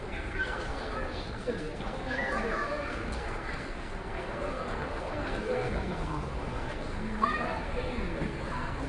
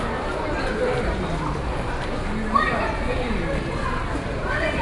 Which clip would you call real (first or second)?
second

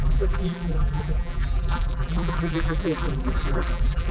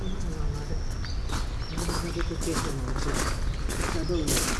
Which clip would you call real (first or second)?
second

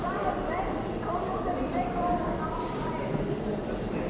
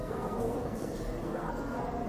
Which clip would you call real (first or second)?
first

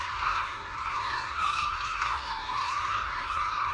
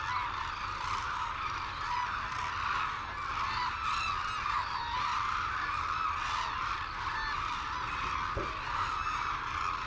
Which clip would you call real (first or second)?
second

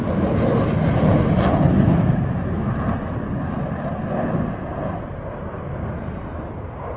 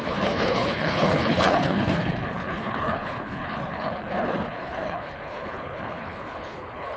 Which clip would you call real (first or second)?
first